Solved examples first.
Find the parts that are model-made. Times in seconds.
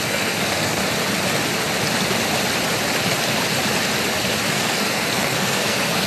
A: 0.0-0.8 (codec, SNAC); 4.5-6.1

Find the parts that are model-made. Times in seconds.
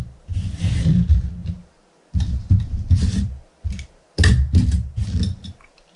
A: none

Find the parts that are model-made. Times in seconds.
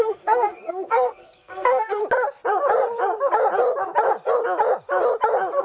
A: 0.0-2.0 (codec, SNAC)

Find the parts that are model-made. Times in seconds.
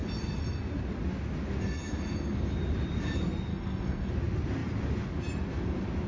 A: 3.5-4.1 (codec, SNAC)